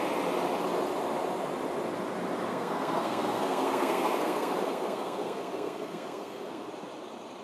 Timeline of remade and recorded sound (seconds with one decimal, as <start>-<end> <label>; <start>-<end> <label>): 0.0-2.5 recorded; 2.5-6.7 remade; 6.7-7.4 recorded